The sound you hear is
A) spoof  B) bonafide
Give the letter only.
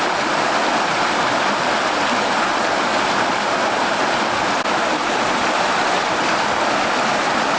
B